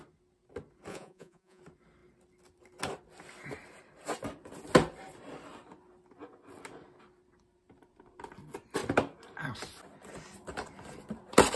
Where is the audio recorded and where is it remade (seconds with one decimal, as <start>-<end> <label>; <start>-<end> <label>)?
0.0-0.9 recorded; 0.9-1.6 remade; 1.6-11.6 recorded